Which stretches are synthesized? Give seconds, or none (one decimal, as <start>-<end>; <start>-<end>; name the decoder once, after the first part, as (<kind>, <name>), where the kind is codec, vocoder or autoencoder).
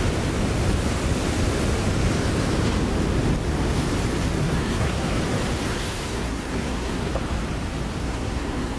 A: 4.4-5.2 (codec, SNAC); 5.7-7.1; 8.0-8.8